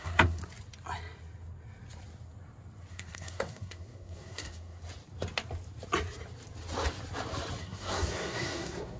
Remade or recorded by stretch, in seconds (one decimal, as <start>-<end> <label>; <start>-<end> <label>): 0.0-0.4 remade; 0.4-2.9 recorded; 2.9-4.8 remade; 4.8-7.6 recorded; 7.6-9.0 remade